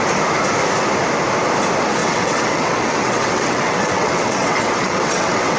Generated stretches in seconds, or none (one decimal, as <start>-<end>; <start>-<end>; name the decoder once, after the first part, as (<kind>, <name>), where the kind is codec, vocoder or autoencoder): 2.0-5.6 (vocoder, WaveNeXt)

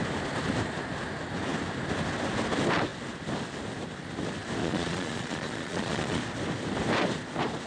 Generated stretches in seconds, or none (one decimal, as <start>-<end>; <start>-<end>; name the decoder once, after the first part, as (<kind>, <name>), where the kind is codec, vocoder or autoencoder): 4.6-6.2 (vocoder, Vocos)

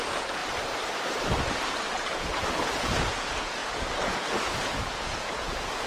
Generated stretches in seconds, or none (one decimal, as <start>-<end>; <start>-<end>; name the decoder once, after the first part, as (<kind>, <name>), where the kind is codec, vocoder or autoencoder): 0.0-0.4 (vocoder, Vocos); 1.9-5.9

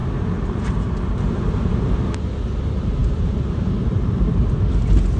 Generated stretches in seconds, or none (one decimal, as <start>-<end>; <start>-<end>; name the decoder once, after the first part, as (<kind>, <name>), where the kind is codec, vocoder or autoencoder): 0.0-1.9 (vocoder, BigVGAN v2); 3.0-4.4

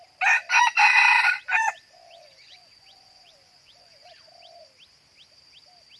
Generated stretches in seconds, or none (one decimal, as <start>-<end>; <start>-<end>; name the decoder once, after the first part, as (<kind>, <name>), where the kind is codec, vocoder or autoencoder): 0.5-4.1 (vocoder, Vocos)